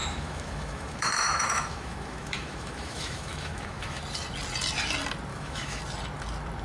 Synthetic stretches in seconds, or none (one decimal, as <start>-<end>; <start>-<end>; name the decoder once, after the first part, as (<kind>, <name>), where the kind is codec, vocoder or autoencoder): 0.0-4.0 (autoencoder, DAC-VAE); 5.3-5.8